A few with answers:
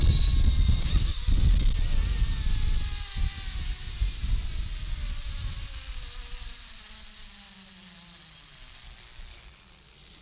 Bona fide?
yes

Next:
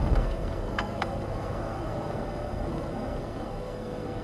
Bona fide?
no